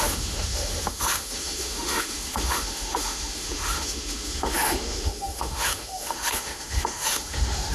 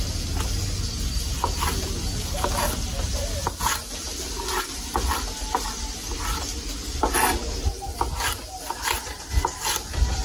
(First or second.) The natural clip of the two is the second